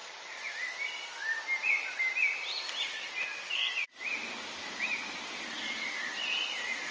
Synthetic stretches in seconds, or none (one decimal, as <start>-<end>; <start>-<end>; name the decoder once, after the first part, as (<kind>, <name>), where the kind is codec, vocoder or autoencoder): none